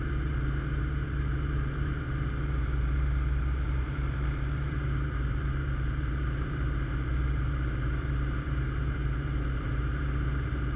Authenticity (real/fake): fake